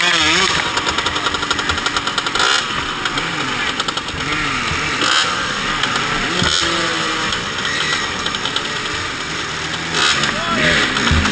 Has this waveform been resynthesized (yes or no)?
no